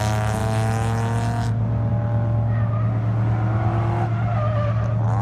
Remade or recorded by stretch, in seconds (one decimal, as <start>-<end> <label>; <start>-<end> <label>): 0.0-5.2 recorded